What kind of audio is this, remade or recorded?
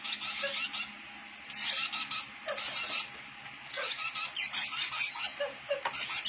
recorded